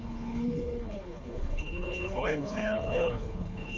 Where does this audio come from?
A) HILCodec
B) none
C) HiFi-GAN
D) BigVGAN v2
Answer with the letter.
A